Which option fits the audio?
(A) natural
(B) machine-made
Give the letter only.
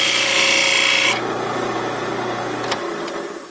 A